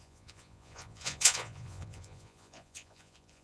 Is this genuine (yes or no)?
no